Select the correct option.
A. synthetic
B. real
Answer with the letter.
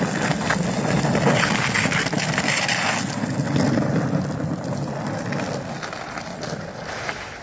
B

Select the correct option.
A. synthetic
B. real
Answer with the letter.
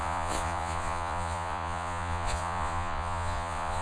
A